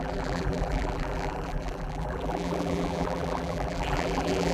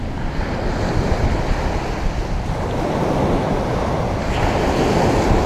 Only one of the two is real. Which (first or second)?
second